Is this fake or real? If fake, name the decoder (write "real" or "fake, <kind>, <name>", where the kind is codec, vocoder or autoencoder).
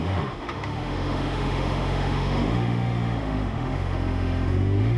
fake, autoencoder, DAC-VAE